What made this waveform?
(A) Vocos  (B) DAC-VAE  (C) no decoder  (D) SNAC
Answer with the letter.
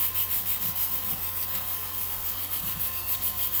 D